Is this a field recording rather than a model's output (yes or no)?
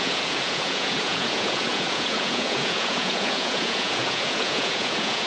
no